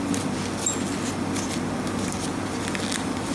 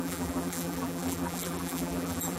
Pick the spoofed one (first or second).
second